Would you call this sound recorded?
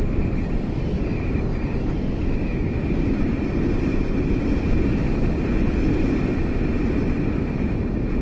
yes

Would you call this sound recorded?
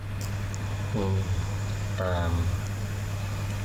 yes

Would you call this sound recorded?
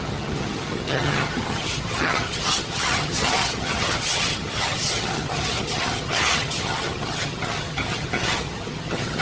no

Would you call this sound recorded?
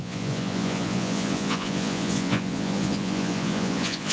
no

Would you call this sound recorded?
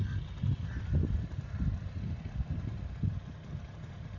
yes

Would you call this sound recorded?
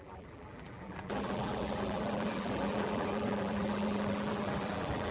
no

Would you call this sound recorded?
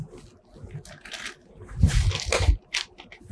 yes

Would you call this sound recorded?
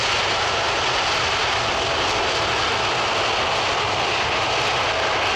yes